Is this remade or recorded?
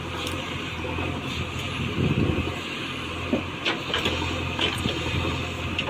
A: recorded